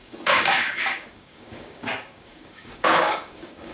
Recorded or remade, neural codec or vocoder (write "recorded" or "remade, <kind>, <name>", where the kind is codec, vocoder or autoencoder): remade, codec, DAC